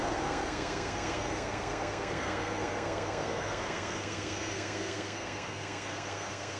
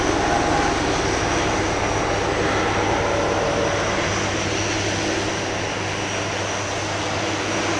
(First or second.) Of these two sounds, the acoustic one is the second